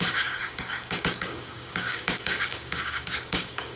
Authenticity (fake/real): fake